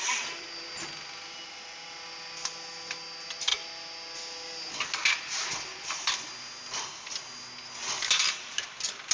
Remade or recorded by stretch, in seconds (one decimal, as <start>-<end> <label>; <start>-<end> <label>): 0.0-9.1 recorded